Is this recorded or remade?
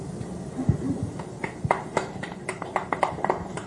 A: remade